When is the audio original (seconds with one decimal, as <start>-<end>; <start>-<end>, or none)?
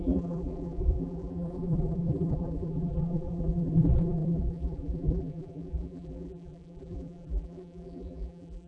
none